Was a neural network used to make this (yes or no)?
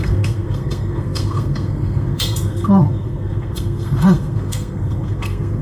yes